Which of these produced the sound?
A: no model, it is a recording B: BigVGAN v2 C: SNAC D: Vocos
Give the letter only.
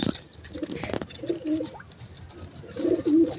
A